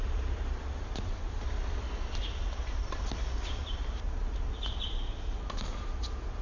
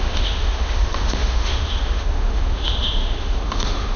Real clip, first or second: first